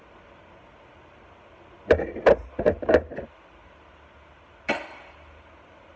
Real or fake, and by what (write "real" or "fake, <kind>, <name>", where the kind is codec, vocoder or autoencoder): real